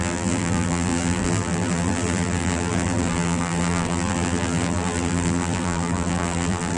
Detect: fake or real fake